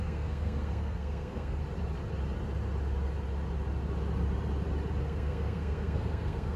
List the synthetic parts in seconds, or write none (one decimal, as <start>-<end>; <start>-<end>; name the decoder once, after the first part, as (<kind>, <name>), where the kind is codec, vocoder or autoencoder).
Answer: 0.0-1.6 (codec, SNAC); 5.0-6.6